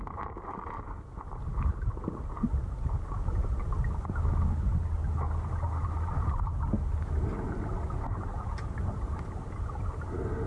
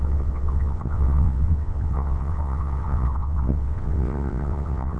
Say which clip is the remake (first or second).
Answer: second